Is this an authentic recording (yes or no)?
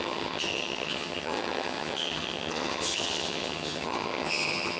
no